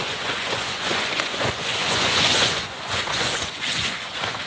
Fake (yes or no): yes